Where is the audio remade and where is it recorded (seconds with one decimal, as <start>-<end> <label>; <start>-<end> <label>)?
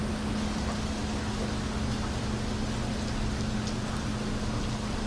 0.0-5.1 recorded